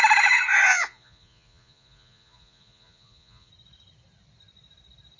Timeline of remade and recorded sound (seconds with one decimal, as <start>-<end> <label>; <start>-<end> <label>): 0.0-0.7 recorded; 0.7-3.5 remade; 3.5-5.2 recorded